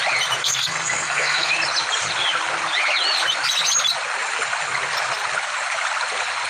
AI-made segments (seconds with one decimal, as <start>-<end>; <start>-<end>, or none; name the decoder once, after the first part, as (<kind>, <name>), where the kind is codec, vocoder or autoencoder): 0.4-1.5 (codec, SNAC)